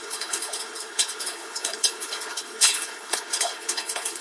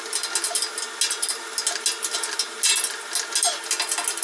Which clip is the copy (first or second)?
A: first